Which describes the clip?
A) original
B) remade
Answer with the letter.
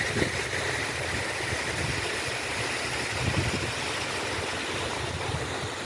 A